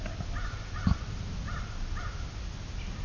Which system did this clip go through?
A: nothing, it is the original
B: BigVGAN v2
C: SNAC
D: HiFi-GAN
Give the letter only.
A